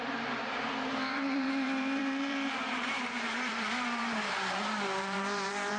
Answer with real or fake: fake